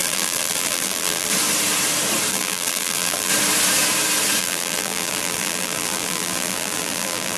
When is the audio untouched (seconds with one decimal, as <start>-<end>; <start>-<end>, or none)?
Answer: 1.3-2.3; 3.3-4.4